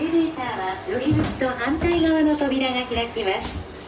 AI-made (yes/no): no